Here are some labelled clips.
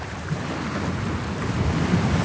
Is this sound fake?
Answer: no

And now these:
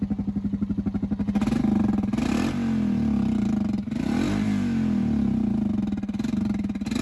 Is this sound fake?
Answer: no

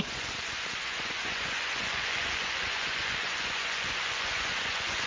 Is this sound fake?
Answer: yes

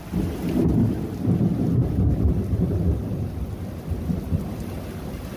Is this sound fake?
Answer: no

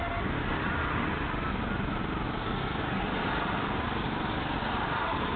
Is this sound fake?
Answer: no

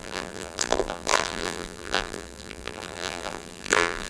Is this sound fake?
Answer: yes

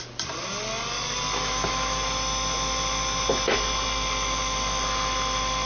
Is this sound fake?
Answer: no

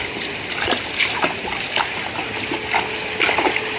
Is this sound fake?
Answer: no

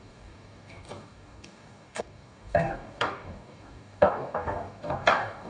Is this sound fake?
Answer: yes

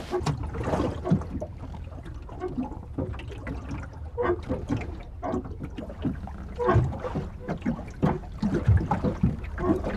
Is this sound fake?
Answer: no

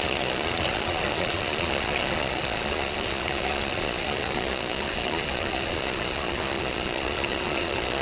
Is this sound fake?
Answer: yes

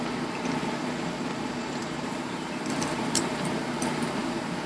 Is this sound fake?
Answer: yes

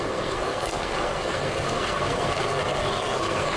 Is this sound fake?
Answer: yes